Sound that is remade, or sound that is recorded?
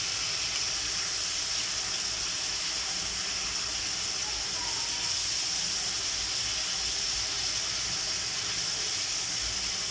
recorded